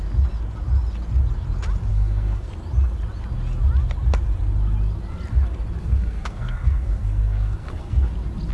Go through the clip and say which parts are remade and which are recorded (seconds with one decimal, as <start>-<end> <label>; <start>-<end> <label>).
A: 0.0-1.9 recorded; 1.9-2.5 remade; 2.5-5.8 recorded; 5.8-8.1 remade; 8.1-8.5 recorded